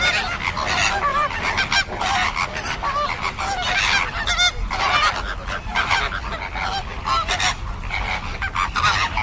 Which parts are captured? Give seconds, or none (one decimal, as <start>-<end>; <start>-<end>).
0.0-1.1; 2.0-9.2